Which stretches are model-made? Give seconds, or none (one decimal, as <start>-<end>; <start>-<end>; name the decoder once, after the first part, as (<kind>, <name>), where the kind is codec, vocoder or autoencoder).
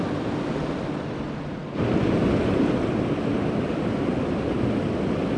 none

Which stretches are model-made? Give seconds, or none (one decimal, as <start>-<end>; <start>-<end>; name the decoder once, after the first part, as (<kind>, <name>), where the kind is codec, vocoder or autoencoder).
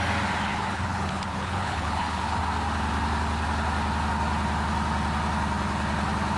0.5-2.4 (codec, HILCodec)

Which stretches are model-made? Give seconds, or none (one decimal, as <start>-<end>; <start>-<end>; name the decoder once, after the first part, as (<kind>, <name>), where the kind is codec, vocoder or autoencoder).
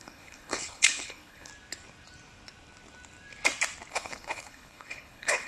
0.0-1.5 (codec, HILCodec); 3.9-5.5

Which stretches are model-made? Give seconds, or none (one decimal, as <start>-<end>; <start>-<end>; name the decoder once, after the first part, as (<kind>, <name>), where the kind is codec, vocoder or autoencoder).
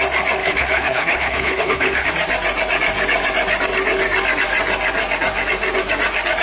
0.4-2.1 (codec, HILCodec)